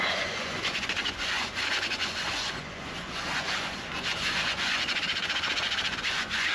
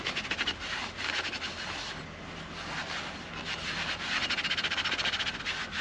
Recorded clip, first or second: second